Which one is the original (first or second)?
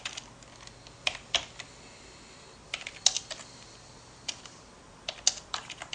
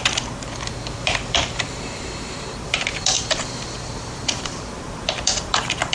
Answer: first